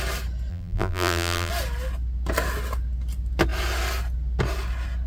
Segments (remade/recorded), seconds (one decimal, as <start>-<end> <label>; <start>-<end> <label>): 0.0-0.5 recorded; 0.5-1.5 remade; 1.5-5.1 recorded